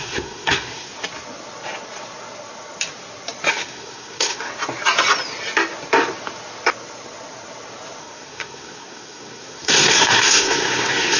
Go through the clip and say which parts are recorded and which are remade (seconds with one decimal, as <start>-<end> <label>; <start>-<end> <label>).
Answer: 0.0-0.9 remade; 0.9-3.5 recorded; 3.5-4.5 remade; 4.5-8.0 recorded; 8.0-11.2 remade